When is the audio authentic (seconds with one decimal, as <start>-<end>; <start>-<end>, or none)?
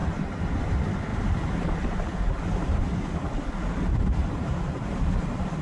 0.6-1.1; 2.8-4.2; 5.0-5.6